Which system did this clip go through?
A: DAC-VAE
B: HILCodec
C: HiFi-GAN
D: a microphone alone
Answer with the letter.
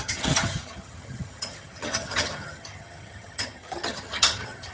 C